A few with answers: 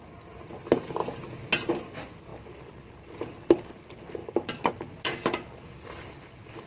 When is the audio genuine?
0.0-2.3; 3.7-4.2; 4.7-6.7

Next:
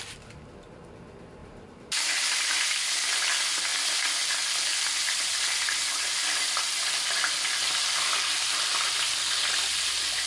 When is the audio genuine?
0.0-1.4; 2.6-3.7; 4.2-10.3

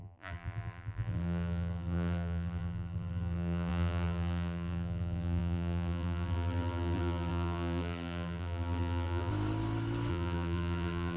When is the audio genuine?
9.3-10.1

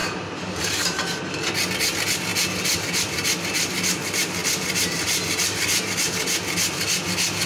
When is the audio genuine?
1.2-4.4; 5.8-7.5

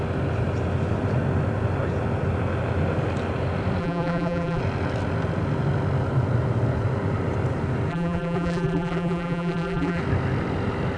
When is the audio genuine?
0.0-3.8; 4.6-7.9; 10.0-11.0

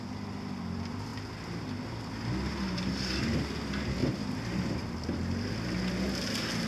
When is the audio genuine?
0.0-4.0; 4.7-6.7

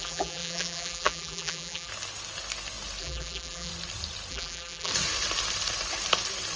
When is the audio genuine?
1.9-3.0; 3.7-4.3; 4.9-6.6